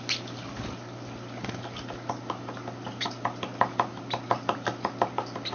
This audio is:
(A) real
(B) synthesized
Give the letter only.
A